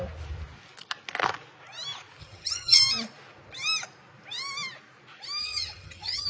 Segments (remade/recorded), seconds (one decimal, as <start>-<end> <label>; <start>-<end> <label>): 0.0-2.2 recorded; 2.2-2.8 remade; 2.8-5.4 recorded; 5.4-6.3 remade